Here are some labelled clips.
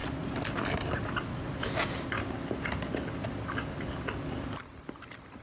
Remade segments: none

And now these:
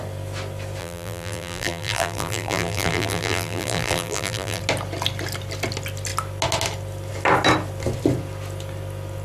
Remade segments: 0.8-4.6 (vocoder, BigVGAN v2)

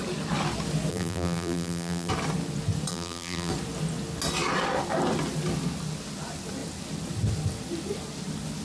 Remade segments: 0.9-2.1 (vocoder, BigVGAN v2); 2.9-3.5

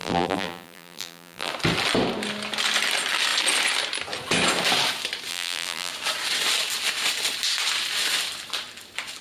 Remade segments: 0.0-1.5 (vocoder, BigVGAN v2); 5.3-5.9